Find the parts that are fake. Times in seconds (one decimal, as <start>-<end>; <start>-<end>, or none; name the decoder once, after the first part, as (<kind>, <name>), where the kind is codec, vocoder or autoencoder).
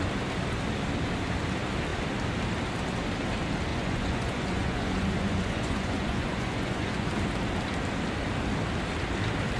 3.7-7.1 (vocoder, Vocos)